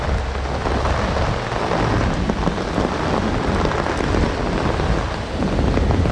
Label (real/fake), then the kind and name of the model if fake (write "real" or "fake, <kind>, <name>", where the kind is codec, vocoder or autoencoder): real